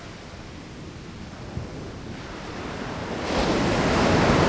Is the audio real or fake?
real